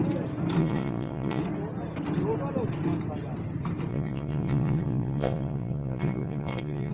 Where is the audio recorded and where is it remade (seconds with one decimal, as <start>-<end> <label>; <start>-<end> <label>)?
0.0-0.6 recorded; 0.6-1.4 remade; 1.4-3.9 recorded; 3.9-6.9 remade